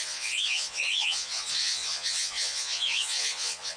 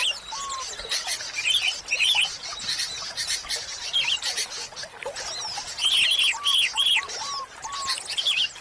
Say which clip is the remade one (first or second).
first